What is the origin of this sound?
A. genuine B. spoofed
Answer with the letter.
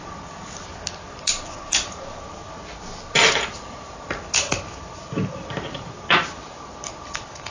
A